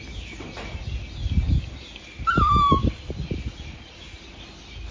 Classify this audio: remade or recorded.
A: recorded